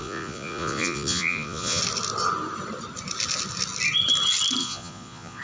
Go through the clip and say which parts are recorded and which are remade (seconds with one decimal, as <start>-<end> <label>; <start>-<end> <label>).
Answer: 0.0-1.8 remade; 1.8-4.6 recorded; 4.6-5.4 remade